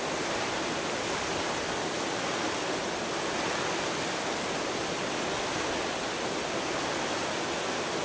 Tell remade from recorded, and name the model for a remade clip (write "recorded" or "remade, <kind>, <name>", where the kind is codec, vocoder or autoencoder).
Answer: recorded